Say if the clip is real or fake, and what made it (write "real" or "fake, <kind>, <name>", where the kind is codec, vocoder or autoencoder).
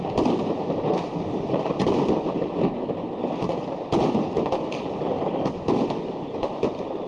fake, vocoder, BigVGAN v2